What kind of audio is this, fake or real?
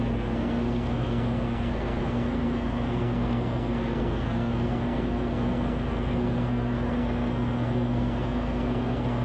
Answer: fake